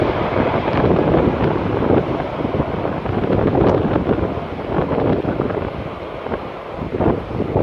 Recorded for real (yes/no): yes